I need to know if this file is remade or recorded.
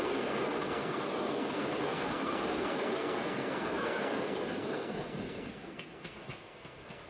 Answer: remade